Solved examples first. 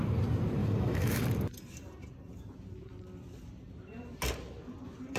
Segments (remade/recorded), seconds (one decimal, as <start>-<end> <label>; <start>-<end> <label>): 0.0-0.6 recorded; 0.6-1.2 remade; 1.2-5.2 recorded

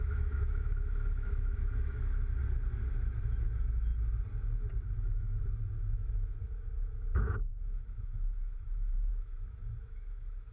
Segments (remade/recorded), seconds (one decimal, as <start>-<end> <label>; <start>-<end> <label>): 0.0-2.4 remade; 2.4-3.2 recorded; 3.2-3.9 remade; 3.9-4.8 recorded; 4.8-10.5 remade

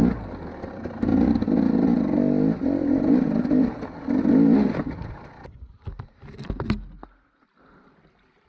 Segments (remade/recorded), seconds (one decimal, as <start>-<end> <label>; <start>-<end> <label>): 0.0-8.5 recorded